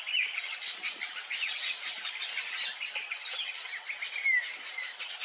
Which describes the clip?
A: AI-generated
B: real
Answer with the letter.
B